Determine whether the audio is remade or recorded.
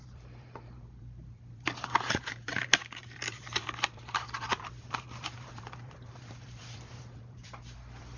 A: remade